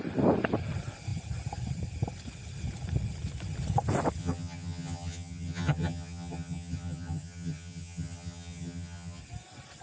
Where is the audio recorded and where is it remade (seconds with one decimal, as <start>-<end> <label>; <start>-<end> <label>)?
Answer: 0.0-4.2 recorded; 4.2-9.2 remade; 9.2-9.8 recorded

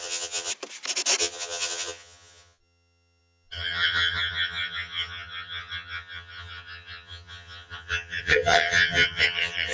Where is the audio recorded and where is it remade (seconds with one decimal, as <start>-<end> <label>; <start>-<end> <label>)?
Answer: 0.0-0.5 remade; 0.5-1.2 recorded; 1.2-9.7 remade

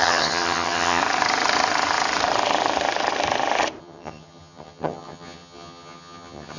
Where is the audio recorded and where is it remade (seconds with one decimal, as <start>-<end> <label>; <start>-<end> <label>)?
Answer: 0.0-1.0 remade; 1.0-3.8 recorded; 3.8-6.6 remade

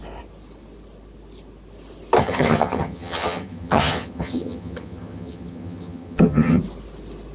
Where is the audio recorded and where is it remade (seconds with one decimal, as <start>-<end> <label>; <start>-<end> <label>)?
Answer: 0.0-2.2 recorded; 2.2-6.6 remade; 6.6-7.3 recorded

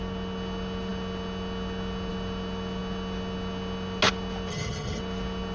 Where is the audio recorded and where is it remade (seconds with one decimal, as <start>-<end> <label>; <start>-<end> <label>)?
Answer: 0.0-4.5 recorded; 4.5-5.0 remade; 5.0-5.5 recorded

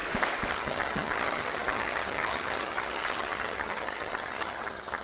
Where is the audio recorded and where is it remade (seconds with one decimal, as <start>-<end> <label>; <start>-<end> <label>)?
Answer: 0.0-0.5 recorded; 0.5-5.0 remade

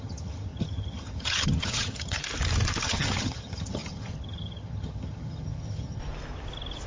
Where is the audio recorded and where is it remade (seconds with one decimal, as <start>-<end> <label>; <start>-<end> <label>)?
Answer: 0.0-2.2 remade; 2.2-2.8 recorded; 2.8-6.0 remade; 6.0-6.9 recorded

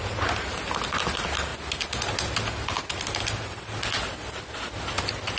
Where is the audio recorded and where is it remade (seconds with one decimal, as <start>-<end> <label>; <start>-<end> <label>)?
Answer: 0.0-5.4 recorded